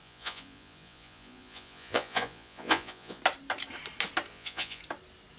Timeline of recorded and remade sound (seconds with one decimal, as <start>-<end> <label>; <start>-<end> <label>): 0.0-3.2 remade; 3.2-4.3 recorded; 4.3-4.8 remade; 4.8-5.4 recorded